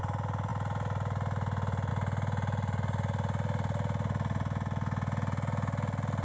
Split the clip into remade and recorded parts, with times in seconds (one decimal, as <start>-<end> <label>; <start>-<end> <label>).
0.0-6.2 recorded